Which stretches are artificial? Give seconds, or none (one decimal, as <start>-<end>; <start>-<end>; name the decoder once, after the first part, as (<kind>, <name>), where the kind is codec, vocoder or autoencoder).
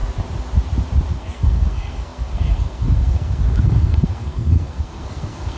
1.1-5.6 (codec, SNAC)